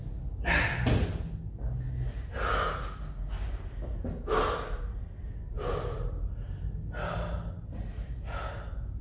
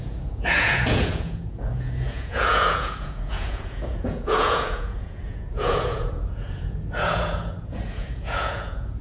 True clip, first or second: first